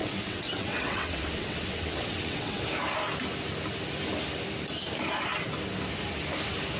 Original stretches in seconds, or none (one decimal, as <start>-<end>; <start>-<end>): 2.6-6.8